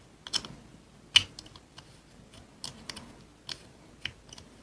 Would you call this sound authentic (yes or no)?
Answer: yes